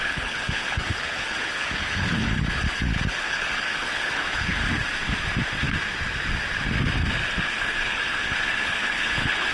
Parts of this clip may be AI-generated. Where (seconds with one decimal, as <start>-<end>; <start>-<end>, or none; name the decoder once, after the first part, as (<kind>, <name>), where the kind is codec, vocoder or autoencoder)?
0.0-4.6 (codec, HILCodec); 7.4-9.5

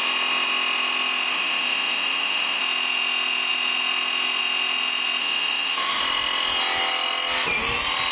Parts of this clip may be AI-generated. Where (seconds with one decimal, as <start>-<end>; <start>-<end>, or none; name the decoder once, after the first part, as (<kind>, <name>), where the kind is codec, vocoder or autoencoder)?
1.3-2.6 (autoencoder, DAC-VAE); 5.2-6.0